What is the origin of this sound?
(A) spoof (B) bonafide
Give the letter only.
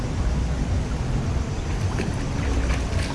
B